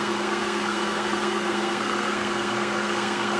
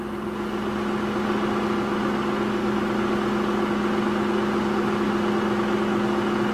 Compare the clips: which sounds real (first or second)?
second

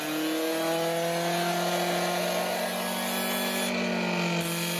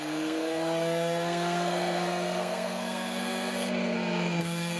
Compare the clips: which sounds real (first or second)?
first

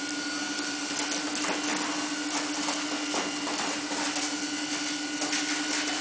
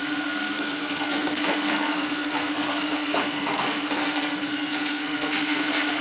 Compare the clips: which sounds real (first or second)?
first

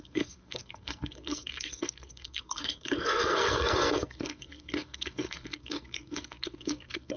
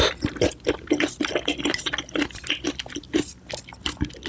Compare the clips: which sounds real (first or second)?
second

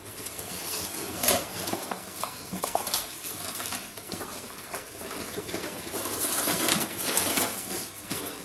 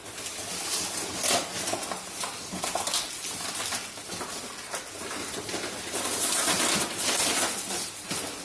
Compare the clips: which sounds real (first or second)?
second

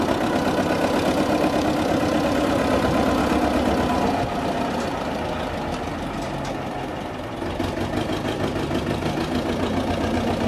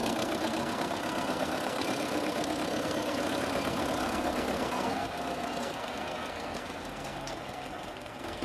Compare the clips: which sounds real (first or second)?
first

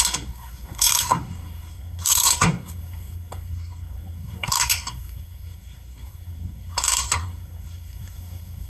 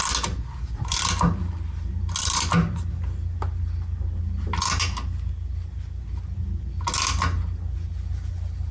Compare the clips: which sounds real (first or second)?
second